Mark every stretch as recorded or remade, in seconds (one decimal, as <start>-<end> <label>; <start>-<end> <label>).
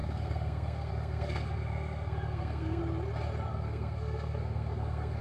0.0-2.8 remade; 2.8-3.5 recorded; 3.5-5.2 remade